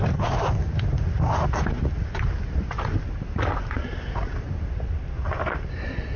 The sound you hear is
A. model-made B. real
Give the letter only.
B